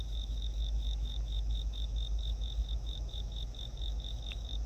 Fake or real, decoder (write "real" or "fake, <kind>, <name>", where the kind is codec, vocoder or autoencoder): fake, autoencoder, DAC-VAE